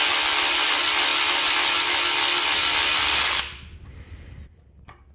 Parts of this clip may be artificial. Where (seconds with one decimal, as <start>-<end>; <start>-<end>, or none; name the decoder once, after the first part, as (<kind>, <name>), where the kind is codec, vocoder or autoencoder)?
none